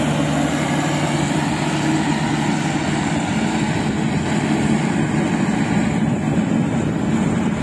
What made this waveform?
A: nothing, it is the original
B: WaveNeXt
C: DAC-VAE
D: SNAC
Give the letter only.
A